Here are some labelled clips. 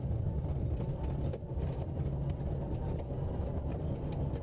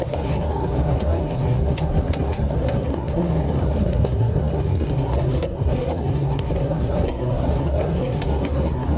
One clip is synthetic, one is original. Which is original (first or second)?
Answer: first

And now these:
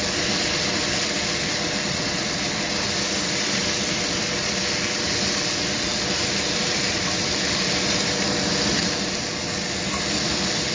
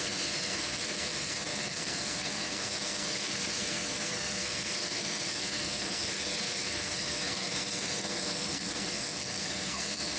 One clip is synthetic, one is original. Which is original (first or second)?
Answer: first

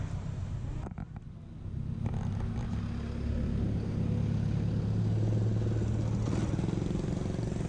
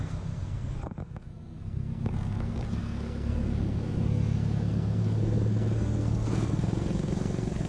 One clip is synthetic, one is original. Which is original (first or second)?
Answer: first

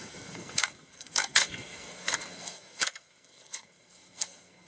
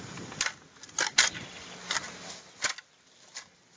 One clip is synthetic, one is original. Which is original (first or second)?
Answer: second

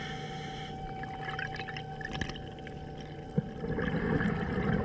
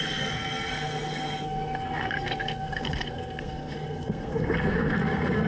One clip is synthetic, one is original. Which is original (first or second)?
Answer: first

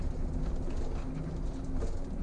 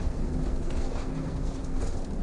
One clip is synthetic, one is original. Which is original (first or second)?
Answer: first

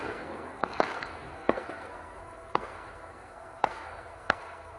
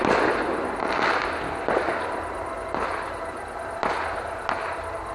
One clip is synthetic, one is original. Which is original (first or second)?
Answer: second